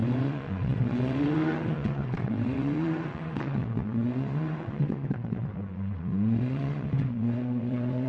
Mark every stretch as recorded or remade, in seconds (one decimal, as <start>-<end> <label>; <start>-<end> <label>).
0.0-8.1 remade